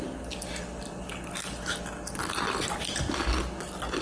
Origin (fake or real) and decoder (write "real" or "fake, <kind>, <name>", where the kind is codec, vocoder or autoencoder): real